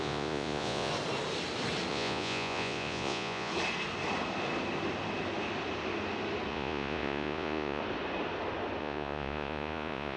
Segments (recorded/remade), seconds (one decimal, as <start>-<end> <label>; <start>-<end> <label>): 0.0-0.9 remade; 0.9-1.9 recorded; 1.9-3.5 remade; 3.5-6.5 recorded; 6.5-7.8 remade; 7.8-8.8 recorded; 8.8-10.2 remade